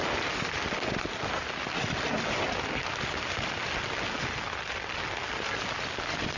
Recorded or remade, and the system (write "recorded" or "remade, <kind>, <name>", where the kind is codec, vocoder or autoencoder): recorded